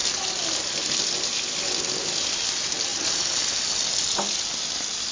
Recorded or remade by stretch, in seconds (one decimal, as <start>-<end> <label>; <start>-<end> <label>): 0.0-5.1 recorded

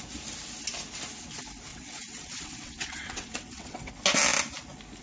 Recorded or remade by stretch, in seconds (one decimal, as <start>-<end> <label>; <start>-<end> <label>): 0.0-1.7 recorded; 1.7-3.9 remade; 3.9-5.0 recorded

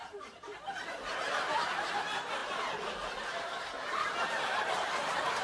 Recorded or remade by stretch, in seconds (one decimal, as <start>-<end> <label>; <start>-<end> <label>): 0.0-5.4 recorded

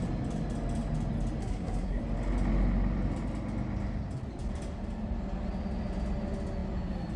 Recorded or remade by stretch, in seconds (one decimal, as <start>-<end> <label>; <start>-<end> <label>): 0.0-1.4 recorded; 1.4-2.0 remade; 2.0-7.2 recorded

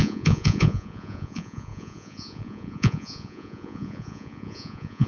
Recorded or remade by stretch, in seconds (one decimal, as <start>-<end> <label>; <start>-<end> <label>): 0.0-5.1 remade